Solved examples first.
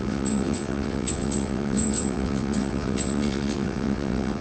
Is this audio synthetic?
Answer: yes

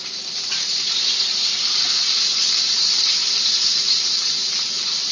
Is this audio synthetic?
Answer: yes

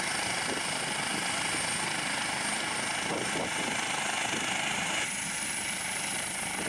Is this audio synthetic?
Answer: no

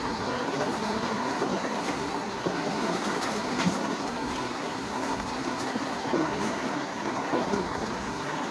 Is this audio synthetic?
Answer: yes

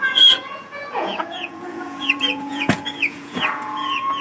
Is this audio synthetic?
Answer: yes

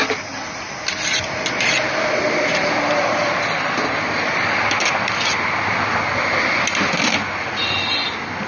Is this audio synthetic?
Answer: no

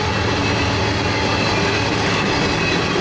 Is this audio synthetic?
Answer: no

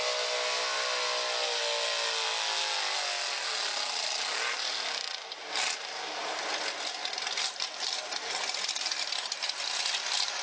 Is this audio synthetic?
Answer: no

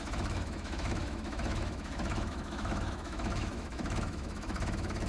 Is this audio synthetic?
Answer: yes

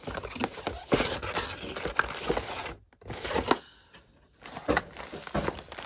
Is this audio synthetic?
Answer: no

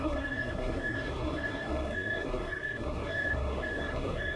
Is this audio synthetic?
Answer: yes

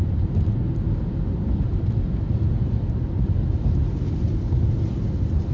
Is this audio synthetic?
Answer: no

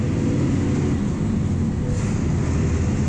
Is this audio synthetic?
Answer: no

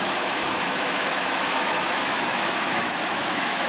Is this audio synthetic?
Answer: yes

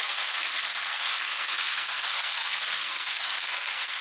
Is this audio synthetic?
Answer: yes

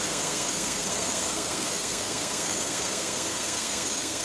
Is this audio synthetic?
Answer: yes